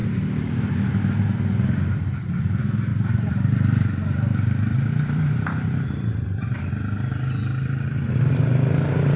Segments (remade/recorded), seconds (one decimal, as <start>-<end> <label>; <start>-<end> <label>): 0.0-2.9 recorded; 2.9-6.7 remade; 6.7-9.2 recorded